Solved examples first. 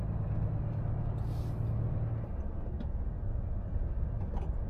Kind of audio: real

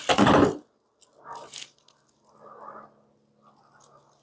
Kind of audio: real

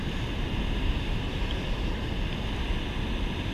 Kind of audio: real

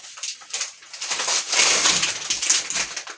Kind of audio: real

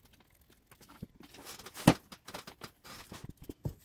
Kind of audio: real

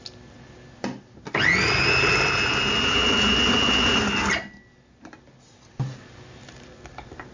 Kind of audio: real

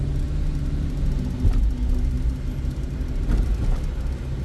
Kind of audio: real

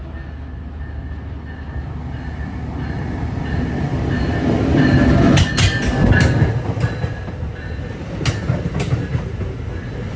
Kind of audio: real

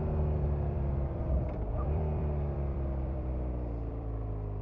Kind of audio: fake